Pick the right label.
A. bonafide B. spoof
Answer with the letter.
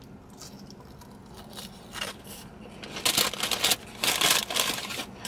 A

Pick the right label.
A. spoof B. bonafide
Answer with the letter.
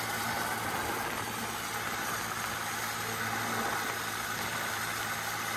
B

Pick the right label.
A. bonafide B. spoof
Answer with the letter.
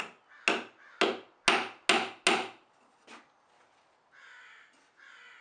A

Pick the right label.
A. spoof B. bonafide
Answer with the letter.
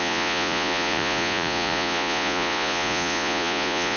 A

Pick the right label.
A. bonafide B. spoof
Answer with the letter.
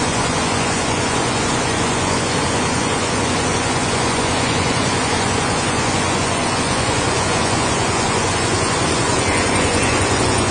B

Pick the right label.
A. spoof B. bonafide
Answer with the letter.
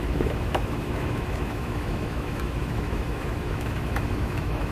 A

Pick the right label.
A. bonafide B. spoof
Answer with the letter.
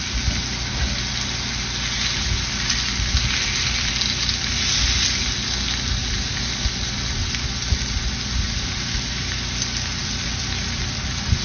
A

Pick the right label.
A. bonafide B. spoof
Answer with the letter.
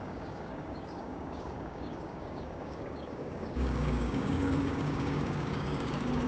B